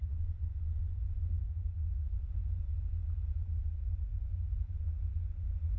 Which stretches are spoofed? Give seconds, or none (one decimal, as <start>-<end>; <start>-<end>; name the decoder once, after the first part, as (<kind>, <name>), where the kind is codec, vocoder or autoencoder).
none